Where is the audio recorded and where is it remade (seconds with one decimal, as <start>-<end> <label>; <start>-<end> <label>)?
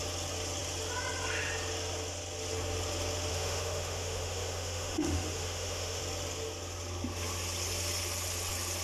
0.0-3.3 recorded; 3.3-6.0 remade; 6.0-8.8 recorded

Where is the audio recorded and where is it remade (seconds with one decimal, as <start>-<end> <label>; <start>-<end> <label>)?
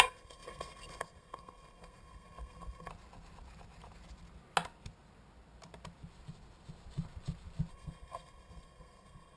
0.0-2.9 remade; 2.9-7.7 recorded; 7.7-9.4 remade